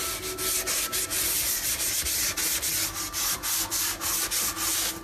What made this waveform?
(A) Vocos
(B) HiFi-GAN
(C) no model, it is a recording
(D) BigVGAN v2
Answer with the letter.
C